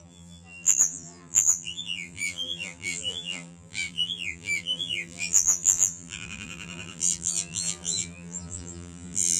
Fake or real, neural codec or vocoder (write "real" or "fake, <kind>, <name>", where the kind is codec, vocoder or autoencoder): fake, vocoder, BigVGAN v2